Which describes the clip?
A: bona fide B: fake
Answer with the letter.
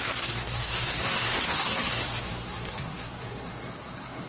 B